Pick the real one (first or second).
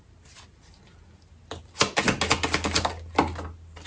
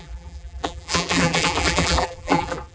first